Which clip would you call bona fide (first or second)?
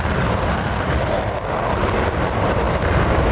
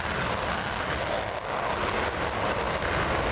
second